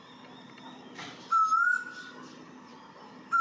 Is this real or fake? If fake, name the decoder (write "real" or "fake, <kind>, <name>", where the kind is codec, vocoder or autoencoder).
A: real